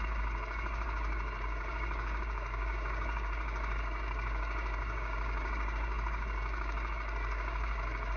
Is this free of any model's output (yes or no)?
no